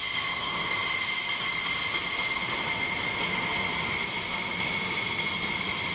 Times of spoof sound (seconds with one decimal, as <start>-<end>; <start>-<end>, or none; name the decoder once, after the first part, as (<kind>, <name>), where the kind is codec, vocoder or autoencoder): none